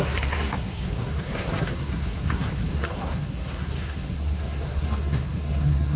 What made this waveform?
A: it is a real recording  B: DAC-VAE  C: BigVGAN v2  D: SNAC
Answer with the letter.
D